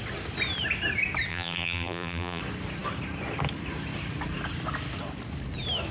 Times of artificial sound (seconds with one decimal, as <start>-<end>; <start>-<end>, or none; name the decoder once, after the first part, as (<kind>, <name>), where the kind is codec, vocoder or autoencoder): 1.3-2.4 (vocoder, BigVGAN v2)